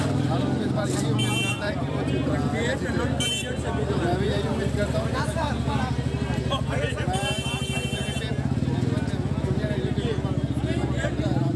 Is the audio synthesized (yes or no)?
no